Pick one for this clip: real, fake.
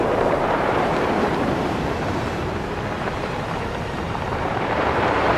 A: fake